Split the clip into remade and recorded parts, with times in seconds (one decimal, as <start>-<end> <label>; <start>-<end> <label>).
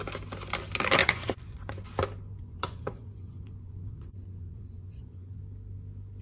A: 0.0-1.0 recorded; 1.0-1.7 remade; 1.7-2.3 recorded; 2.3-5.4 remade; 5.4-6.2 recorded